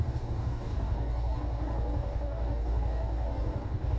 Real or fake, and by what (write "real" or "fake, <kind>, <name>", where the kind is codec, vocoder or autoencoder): fake, codec, DAC